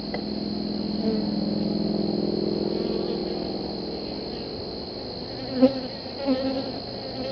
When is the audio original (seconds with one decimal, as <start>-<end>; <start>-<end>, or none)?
0.0-7.3